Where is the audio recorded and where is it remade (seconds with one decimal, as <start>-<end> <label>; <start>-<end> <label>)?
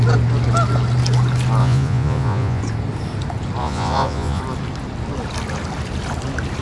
0.0-1.6 recorded; 1.6-2.6 remade; 2.6-3.6 recorded; 3.6-4.4 remade; 4.4-6.6 recorded